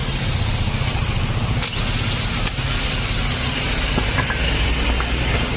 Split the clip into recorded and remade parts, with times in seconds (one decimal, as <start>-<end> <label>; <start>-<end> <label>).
0.0-5.6 recorded